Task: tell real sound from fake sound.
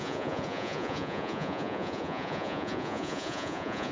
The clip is fake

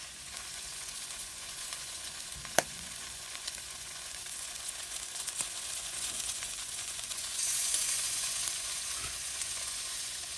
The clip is fake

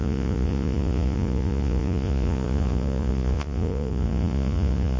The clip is fake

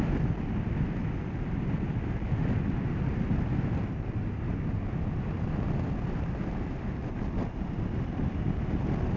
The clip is real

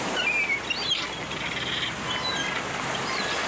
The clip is real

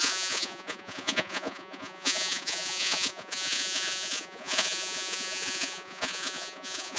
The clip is fake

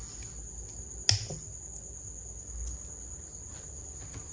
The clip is real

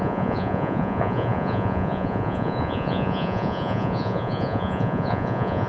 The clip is fake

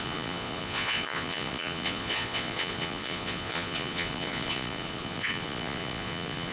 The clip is fake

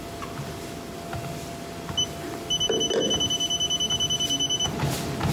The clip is real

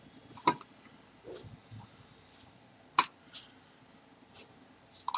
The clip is real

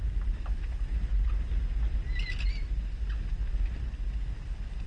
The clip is real